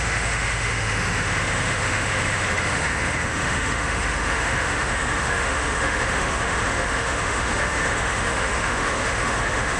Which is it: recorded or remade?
remade